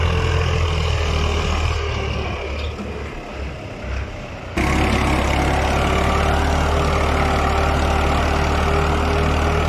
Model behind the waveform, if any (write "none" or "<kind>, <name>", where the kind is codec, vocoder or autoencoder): none